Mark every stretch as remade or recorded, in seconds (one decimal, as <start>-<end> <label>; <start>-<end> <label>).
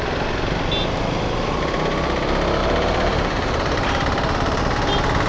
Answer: 0.0-2.6 recorded; 2.6-4.6 remade; 4.6-5.3 recorded